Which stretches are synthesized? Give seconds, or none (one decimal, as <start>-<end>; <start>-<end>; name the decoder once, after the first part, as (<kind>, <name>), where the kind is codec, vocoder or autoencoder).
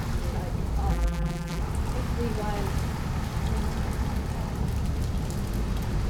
0.9-1.6 (vocoder, BigVGAN v2)